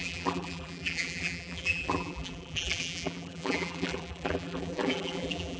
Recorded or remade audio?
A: remade